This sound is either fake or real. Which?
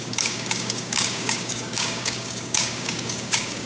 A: fake